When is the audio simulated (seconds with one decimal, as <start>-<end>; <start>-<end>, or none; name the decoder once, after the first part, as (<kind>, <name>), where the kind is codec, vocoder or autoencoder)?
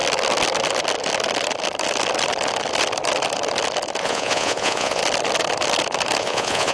4.0-5.0 (vocoder, Vocos); 6.2-6.7